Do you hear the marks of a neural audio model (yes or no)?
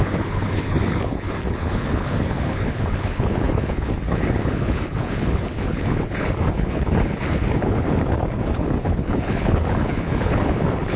yes